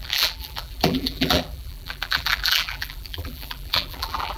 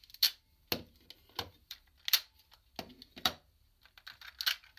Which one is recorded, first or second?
second